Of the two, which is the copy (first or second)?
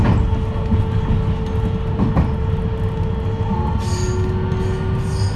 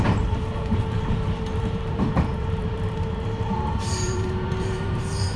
second